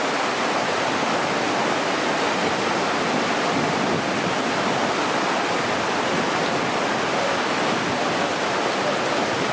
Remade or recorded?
recorded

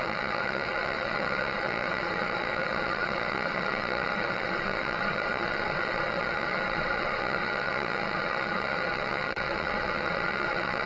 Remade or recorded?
remade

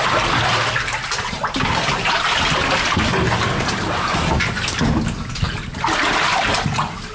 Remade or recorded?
recorded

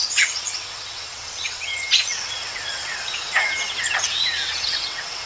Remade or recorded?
remade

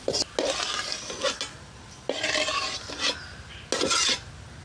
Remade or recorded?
recorded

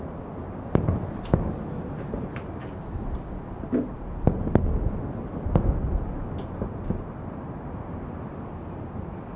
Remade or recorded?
recorded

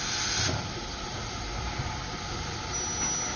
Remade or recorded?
recorded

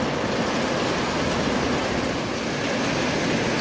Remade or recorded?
recorded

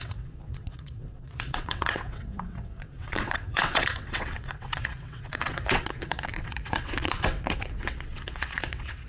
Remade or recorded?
remade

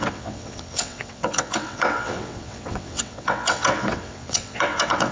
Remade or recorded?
remade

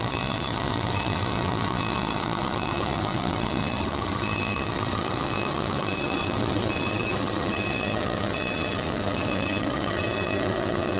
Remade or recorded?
remade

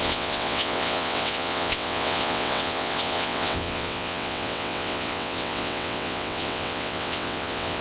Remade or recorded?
remade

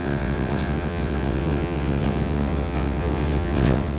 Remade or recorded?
remade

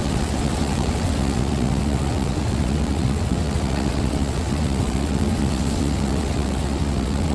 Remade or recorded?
remade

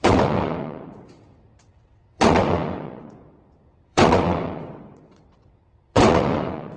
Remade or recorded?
remade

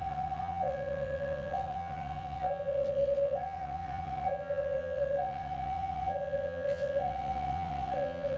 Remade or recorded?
remade